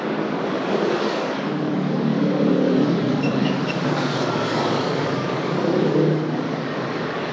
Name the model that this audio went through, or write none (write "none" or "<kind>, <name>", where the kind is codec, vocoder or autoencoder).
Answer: codec, DAC